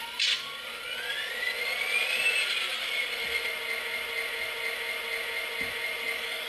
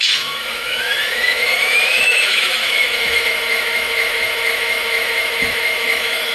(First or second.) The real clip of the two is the first